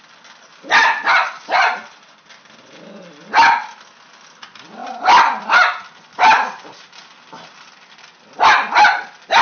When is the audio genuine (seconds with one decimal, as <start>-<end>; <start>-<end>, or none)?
0.0-0.8; 3.3-9.4